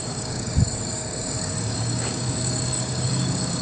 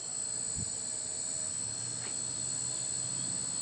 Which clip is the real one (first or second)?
second